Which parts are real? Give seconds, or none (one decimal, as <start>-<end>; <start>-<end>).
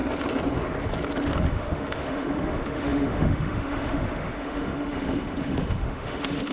0.0-1.5